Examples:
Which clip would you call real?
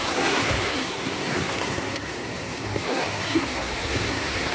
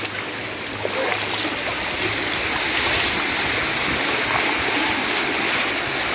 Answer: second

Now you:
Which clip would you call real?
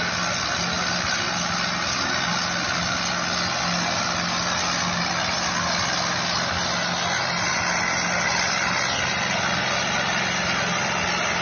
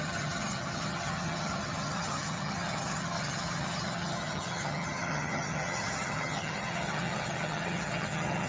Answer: first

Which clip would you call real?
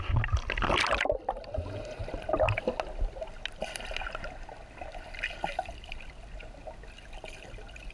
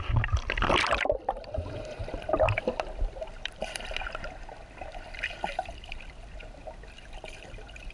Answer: first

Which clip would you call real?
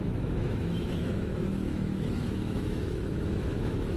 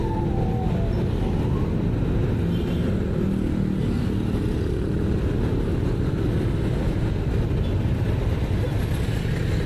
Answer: second